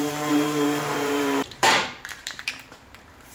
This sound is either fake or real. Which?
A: fake